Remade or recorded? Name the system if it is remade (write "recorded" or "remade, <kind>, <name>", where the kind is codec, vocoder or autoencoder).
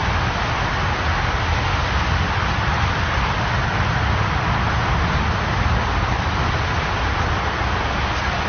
recorded